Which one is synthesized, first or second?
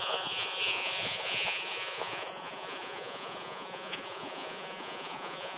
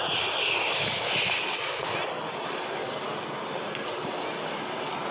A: first